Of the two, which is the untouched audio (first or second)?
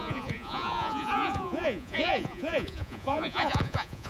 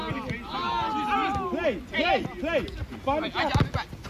second